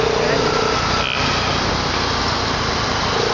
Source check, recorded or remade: recorded